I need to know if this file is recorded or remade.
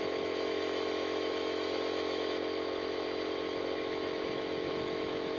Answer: remade